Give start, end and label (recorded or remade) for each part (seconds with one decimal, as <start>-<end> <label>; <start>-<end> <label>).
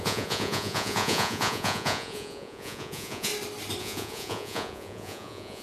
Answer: 0.0-3.3 remade; 3.3-3.8 recorded; 3.8-5.6 remade